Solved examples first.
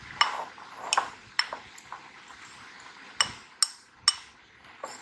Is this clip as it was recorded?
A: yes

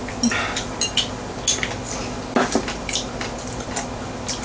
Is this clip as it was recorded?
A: yes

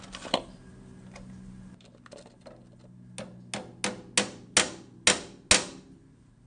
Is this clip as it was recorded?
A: yes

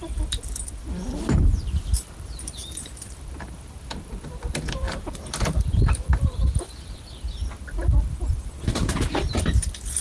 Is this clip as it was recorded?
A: no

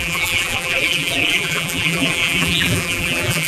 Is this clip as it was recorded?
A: no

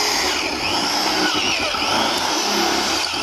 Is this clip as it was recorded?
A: yes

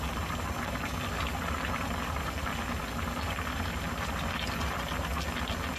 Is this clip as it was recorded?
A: yes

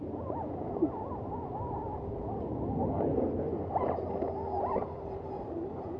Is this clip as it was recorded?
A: yes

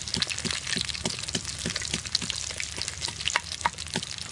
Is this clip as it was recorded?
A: yes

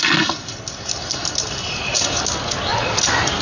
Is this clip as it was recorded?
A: yes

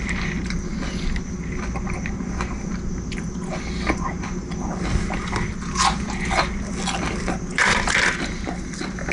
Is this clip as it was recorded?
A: yes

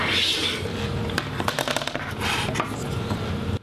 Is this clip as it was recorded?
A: yes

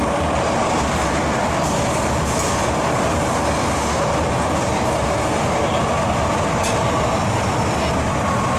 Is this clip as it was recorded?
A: yes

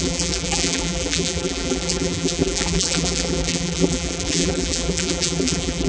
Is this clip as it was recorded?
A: no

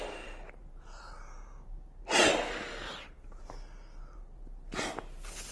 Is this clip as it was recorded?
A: yes